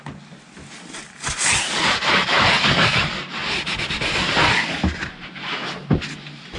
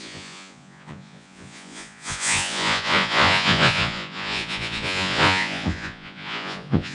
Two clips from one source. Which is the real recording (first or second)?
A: first